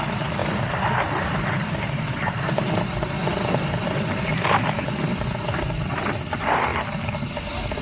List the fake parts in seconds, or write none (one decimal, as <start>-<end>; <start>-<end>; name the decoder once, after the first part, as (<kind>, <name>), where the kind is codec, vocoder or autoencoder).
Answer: 0.0-3.2 (vocoder, BigVGAN v2); 4.6-6.7